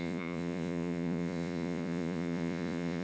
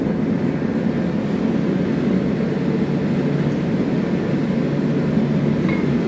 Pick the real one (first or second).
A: second